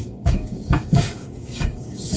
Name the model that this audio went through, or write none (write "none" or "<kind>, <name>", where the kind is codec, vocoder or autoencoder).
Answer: codec, DAC